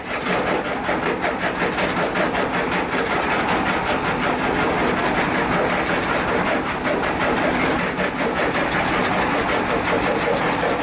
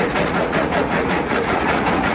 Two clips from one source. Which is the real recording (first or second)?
first